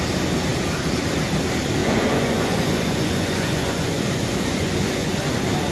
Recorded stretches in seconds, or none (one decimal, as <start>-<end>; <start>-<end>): 0.0-1.8; 5.2-5.7